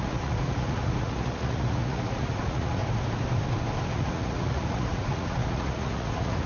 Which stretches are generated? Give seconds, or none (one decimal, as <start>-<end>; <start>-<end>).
0.0-2.8; 3.9-6.5

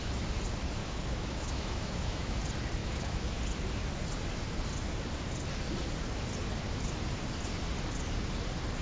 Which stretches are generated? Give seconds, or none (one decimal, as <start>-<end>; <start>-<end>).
0.8-2.4; 2.8-3.4

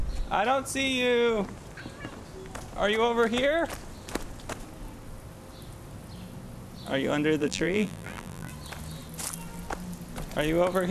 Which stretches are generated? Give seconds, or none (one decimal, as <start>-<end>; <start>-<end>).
7.4-8.5

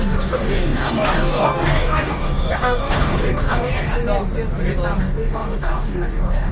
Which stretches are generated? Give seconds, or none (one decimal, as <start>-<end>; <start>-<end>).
0.0-4.0; 5.0-6.5

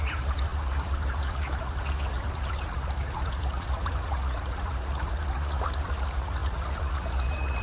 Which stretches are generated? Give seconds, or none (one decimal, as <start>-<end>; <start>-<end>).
0.0-7.6

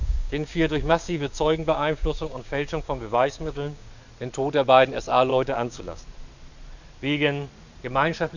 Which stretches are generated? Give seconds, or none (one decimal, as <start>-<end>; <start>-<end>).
0.0-3.9; 5.3-6.0